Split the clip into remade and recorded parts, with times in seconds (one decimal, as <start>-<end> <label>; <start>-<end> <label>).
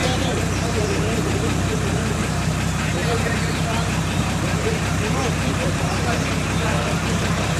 0.0-7.6 remade